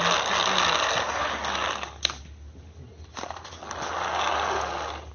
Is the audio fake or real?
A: real